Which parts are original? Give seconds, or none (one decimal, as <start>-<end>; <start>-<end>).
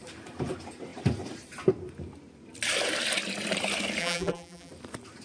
0.0-4.0; 4.7-5.2